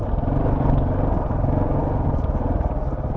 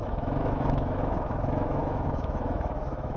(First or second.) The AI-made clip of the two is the second